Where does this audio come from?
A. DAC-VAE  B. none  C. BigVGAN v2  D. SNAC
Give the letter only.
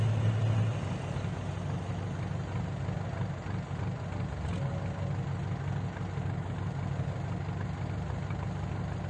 B